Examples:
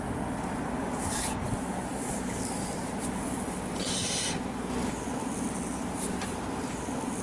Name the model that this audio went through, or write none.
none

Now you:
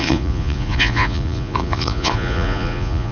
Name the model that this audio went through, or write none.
vocoder, Vocos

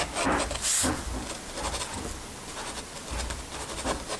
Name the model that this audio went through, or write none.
none